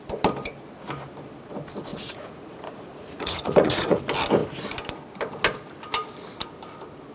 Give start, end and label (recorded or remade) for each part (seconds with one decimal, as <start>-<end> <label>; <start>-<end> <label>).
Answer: 0.0-1.9 recorded; 1.9-4.0 remade; 4.0-7.1 recorded